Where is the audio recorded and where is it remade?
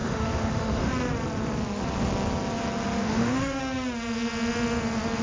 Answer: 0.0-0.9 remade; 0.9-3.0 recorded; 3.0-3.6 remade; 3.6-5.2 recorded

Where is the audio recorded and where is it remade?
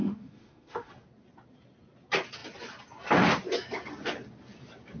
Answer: 0.0-0.9 remade; 0.9-5.0 recorded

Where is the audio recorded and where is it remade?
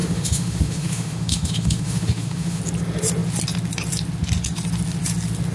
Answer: 0.0-2.6 remade; 2.6-5.5 recorded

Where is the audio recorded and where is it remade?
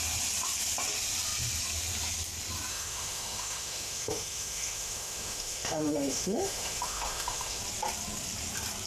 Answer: 0.0-2.7 recorded; 2.7-7.6 remade; 7.6-8.9 recorded